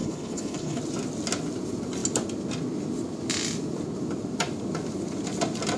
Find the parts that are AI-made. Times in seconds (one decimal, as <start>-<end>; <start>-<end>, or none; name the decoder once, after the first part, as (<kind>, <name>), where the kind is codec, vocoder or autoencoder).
0.0-0.8 (codec, HILCodec)